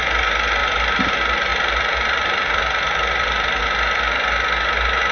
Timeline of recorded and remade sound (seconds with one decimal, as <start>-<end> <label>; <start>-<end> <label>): 0.0-0.6 recorded; 0.6-1.1 remade; 1.1-1.5 recorded; 1.5-3.6 remade; 3.6-5.1 recorded